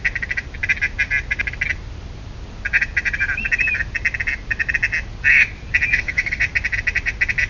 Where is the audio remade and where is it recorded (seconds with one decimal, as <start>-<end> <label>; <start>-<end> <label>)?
0.0-5.9 recorded; 5.9-6.4 remade; 6.4-7.5 recorded